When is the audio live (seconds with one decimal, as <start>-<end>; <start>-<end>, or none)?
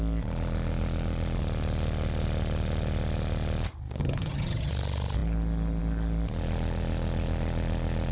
0.0-4.0; 4.7-8.1